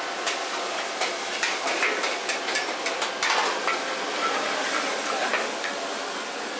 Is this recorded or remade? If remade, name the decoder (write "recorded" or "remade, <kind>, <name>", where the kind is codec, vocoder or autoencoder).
recorded